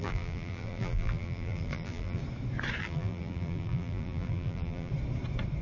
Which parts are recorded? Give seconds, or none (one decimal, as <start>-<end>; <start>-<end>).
2.2-2.8; 4.9-5.6